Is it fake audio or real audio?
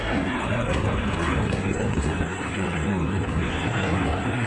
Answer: fake